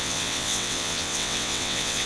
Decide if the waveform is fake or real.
fake